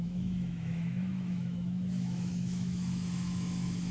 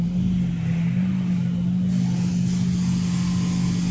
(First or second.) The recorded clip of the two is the second